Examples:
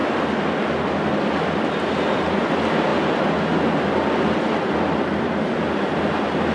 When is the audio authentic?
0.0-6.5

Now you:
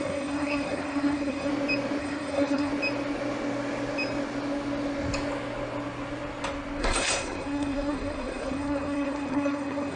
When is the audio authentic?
1.5-2.0; 2.7-6.8

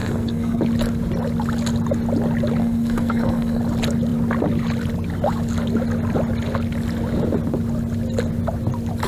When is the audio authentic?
0.6-2.6; 3.6-9.1

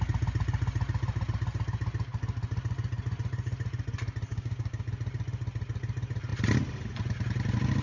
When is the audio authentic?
0.0-4.3; 4.9-7.8

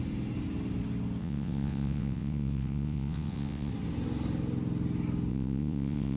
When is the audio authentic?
0.0-1.2; 3.7-5.3

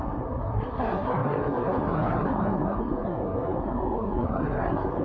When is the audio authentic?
none

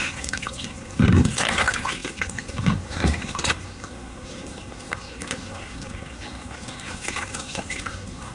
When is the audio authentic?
none

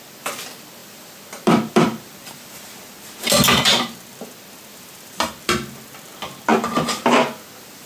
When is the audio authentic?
0.0-0.8; 5.5-6.5; 7.4-7.9